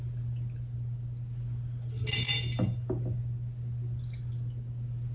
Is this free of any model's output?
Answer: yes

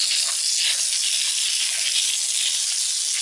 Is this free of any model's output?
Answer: yes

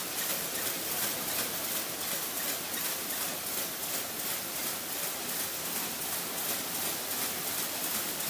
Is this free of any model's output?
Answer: yes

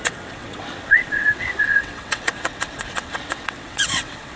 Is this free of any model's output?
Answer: no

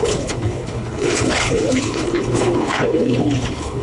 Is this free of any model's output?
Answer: no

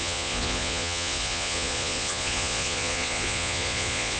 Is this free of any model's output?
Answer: no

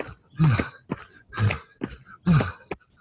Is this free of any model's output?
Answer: yes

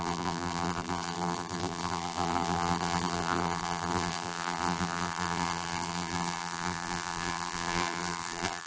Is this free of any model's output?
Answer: no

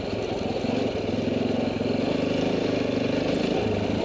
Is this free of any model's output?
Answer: yes